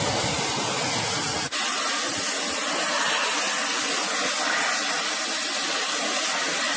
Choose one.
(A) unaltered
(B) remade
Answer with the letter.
A